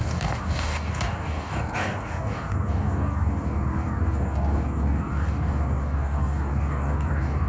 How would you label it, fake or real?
fake